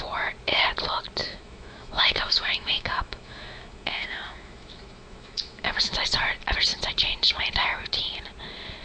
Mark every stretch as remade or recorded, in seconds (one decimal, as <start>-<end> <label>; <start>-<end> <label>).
0.0-1.2 recorded; 1.2-5.9 remade; 5.9-8.8 recorded